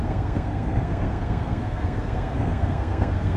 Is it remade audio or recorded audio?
remade